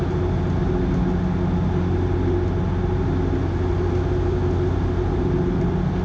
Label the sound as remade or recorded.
recorded